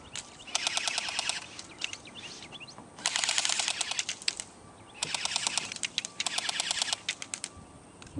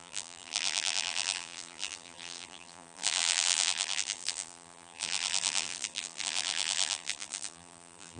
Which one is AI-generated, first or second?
second